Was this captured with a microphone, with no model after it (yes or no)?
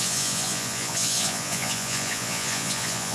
no